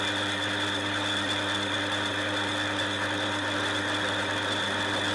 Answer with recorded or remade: recorded